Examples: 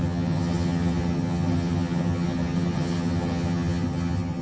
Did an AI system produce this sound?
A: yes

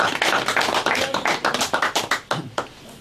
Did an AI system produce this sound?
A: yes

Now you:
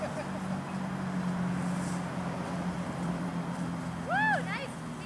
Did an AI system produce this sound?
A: no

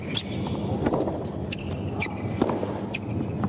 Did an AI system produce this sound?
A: no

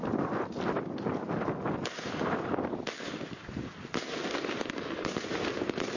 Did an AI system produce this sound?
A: no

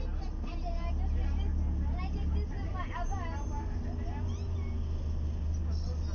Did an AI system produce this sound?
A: no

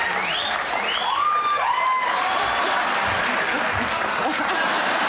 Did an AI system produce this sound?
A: no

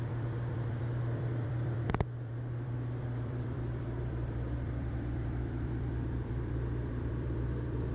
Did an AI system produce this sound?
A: yes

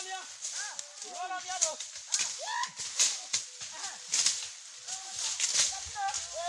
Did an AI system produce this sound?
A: no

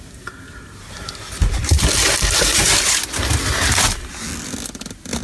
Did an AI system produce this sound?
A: no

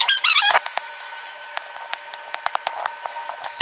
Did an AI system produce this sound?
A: yes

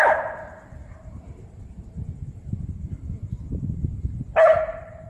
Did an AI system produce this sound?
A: no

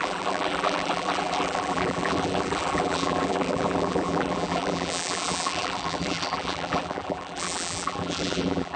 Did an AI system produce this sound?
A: yes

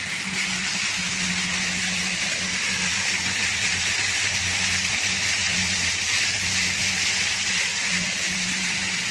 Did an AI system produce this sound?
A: no